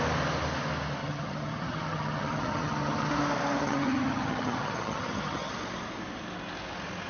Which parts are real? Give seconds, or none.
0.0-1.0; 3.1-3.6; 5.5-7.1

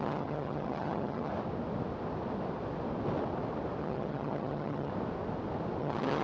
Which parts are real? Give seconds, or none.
1.3-3.8; 4.9-5.8

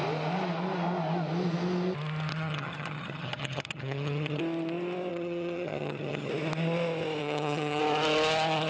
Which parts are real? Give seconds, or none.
0.0-2.3; 4.4-5.1; 6.3-7.2; 7.8-8.7

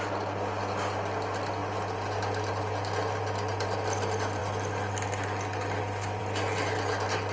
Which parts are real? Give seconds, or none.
0.0-7.3

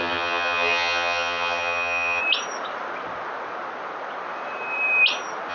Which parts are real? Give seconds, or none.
2.2-5.5

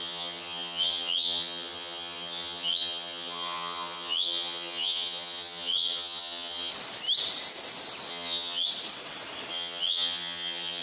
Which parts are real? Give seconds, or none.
6.7-8.1; 8.7-9.5